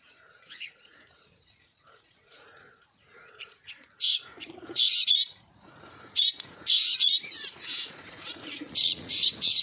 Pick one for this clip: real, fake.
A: fake